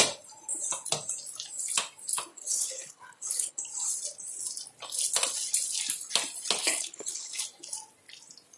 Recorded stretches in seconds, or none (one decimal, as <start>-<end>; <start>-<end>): 0.0-2.3; 3.6-6.6; 7.4-8.6